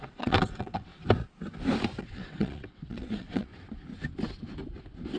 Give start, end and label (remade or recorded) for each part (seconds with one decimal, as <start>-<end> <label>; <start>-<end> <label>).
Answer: 0.0-0.9 remade; 0.9-2.0 recorded; 2.0-3.5 remade; 3.5-5.2 recorded